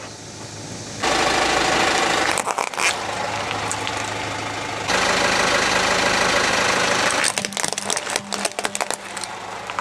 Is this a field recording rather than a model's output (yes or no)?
yes